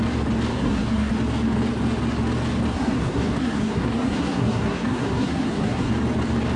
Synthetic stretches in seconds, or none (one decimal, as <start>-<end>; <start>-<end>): 0.5-1.1; 2.7-5.9